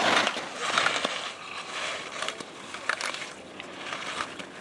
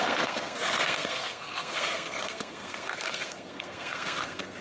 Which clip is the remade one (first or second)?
second